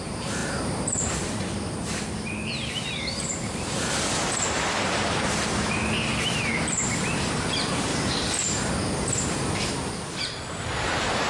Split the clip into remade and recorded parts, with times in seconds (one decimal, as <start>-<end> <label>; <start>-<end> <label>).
0.0-5.8 remade; 5.8-6.6 recorded; 6.6-7.9 remade; 7.9-10.2 recorded; 10.2-11.3 remade